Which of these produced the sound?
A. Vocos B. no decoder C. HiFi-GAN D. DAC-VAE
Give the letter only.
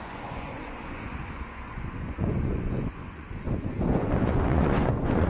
A